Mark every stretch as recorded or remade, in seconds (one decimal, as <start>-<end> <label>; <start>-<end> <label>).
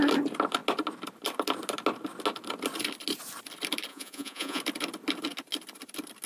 0.0-3.9 recorded; 3.9-4.6 remade; 4.6-6.3 recorded